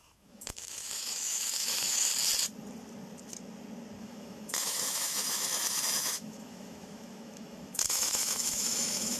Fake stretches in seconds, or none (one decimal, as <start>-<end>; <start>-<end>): 0.0-2.1; 4.0-9.2